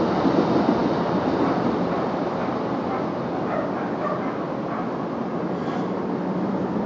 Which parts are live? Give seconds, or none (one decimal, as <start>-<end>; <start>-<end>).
0.0-6.9